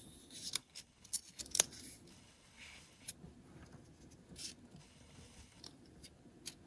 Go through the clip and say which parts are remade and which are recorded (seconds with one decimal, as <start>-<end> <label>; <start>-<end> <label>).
0.0-0.6 recorded; 0.6-1.4 remade; 1.4-2.1 recorded; 2.1-3.1 remade; 3.1-4.8 recorded; 4.8-5.6 remade; 5.6-6.7 recorded